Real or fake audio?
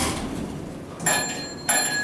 real